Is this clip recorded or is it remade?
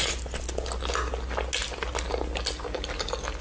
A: recorded